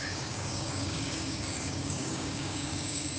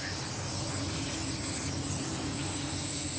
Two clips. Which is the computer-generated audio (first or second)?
first